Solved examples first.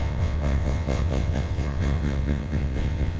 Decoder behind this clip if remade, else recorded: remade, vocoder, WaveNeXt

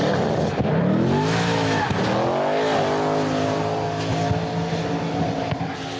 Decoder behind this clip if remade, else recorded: recorded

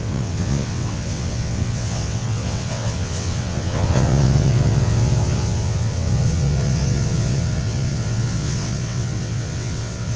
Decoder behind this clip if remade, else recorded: remade, vocoder, WaveNeXt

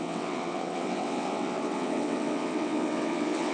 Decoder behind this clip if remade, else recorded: remade, vocoder, WaveNeXt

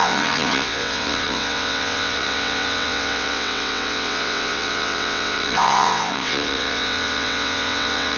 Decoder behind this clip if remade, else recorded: remade, vocoder, WaveNeXt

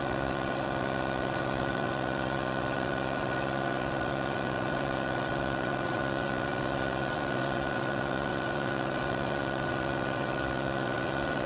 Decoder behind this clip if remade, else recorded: remade, vocoder, WaveNeXt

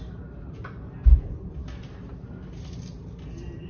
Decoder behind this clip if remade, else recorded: recorded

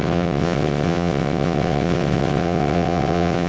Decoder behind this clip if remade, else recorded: remade, vocoder, WaveNeXt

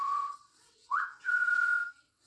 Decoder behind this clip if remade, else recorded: remade, vocoder, WaveNeXt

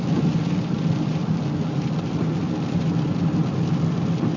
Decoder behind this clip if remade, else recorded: recorded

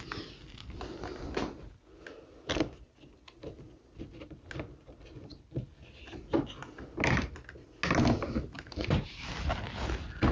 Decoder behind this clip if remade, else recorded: recorded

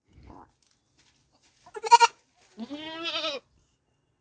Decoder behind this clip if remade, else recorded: recorded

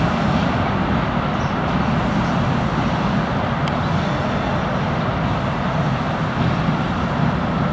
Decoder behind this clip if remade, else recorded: recorded